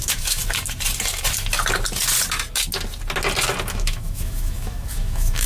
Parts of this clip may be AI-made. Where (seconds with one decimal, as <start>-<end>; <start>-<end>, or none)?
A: 0.0-0.4; 3.7-5.5